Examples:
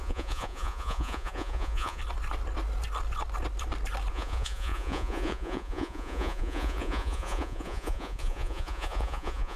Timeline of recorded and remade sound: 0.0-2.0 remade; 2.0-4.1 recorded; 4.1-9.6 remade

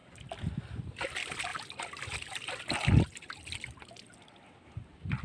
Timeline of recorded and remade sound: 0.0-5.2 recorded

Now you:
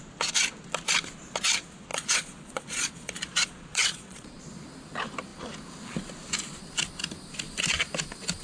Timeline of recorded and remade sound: 0.0-1.9 recorded; 1.9-4.4 remade; 4.4-8.4 recorded

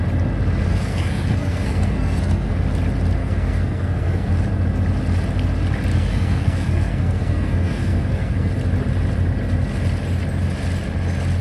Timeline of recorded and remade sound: 0.0-0.7 recorded; 0.7-2.5 remade; 2.5-3.2 recorded; 3.2-4.3 remade; 4.3-5.9 recorded; 5.9-8.5 remade; 8.5-11.4 recorded

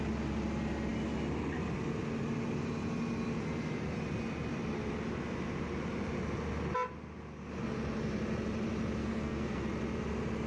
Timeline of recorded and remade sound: 0.0-9.0 recorded; 9.0-9.6 remade; 9.6-10.5 recorded

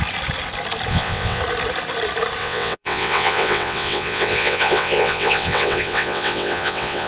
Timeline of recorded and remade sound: 0.0-0.9 recorded; 0.9-1.4 remade; 1.4-2.4 recorded; 2.4-7.1 remade